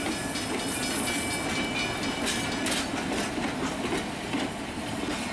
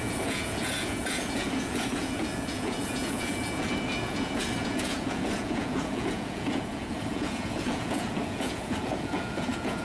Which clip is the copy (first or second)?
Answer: second